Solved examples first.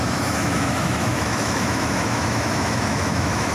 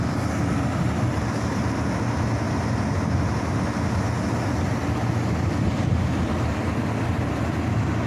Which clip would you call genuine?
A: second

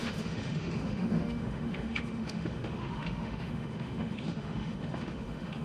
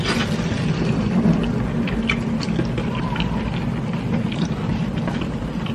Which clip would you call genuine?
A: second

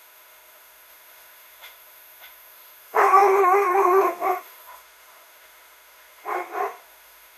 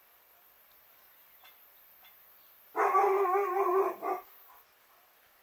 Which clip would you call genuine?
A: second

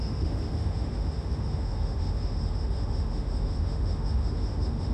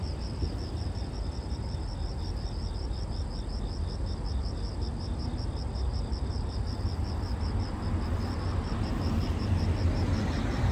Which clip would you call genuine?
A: second